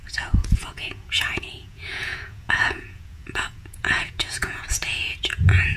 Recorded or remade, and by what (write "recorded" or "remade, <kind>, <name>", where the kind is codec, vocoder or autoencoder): remade, vocoder, Vocos